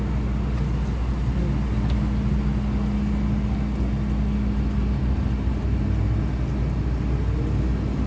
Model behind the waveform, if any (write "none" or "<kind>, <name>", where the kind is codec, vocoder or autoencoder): none